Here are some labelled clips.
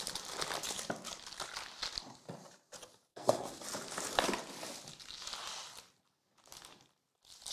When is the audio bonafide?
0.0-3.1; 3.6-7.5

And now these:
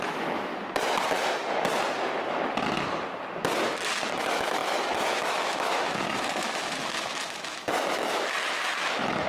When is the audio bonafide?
0.5-4.1